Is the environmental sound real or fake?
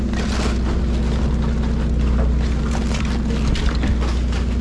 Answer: real